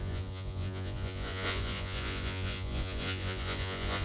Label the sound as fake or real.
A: fake